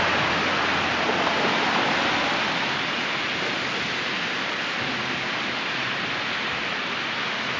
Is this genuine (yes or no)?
yes